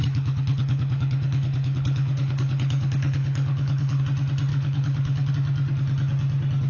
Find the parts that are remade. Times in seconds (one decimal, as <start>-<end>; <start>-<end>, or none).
0.0-4.0; 4.5-5.3